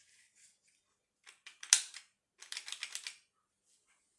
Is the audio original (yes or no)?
yes